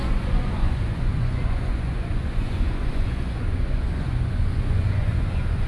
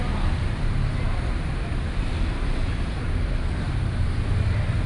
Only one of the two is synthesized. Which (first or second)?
first